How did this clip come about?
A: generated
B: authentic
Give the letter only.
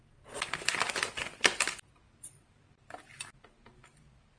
B